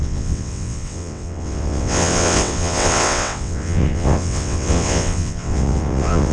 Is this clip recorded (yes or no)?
no